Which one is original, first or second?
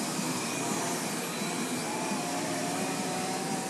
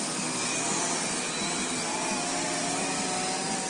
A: second